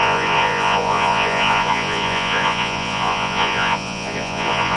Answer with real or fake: fake